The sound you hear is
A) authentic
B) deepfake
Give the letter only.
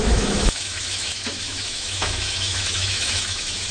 B